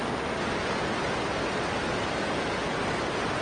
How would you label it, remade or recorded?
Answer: recorded